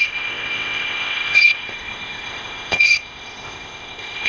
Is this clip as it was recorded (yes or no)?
no